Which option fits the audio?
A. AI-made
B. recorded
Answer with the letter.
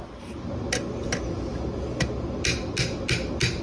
B